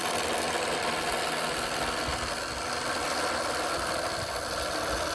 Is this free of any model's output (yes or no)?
yes